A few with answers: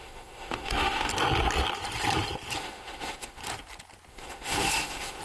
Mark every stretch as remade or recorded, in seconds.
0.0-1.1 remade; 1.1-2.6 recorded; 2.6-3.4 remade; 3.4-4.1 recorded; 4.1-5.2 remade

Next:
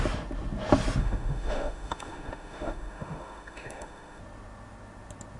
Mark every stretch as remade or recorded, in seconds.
0.0-1.0 recorded; 1.0-4.2 remade; 4.2-5.4 recorded